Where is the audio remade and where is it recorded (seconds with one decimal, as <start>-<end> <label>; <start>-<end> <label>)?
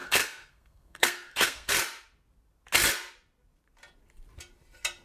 0.0-1.7 remade; 1.7-5.0 recorded